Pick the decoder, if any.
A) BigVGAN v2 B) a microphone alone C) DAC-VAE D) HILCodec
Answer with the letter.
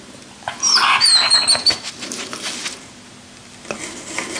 B